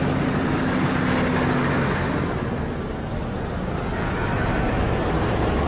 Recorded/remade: recorded